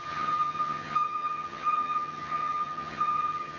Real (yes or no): no